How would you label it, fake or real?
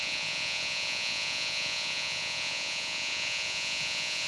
fake